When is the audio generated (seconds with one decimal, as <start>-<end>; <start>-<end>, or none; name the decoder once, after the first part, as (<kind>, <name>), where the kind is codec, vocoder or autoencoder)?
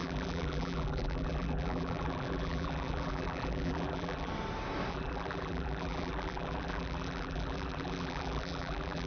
0.0-4.3 (vocoder, BigVGAN v2); 4.9-9.1